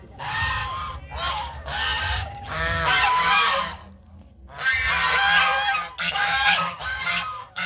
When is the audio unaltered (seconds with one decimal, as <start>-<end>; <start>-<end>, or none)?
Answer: 0.6-1.3; 3.8-6.1